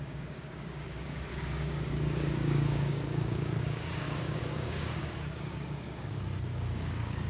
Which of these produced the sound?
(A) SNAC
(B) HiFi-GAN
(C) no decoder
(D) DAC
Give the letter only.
D